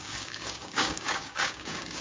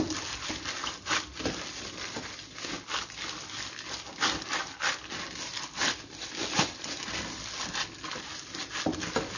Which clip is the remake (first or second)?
first